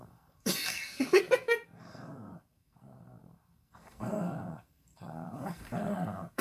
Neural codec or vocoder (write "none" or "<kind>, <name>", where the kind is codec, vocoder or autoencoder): codec, SNAC